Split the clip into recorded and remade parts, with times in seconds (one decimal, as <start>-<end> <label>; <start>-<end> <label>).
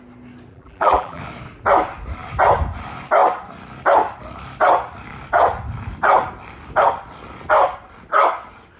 0.0-0.5 recorded; 0.5-1.2 remade; 1.2-8.8 recorded